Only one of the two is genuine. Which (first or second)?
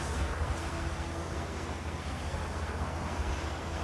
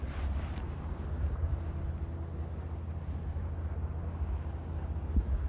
second